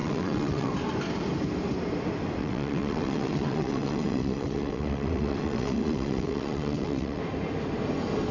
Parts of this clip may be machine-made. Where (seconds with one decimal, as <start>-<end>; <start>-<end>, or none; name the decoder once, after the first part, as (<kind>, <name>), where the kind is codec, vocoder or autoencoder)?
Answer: 0.0-0.7 (vocoder, WaveNeXt); 2.4-7.2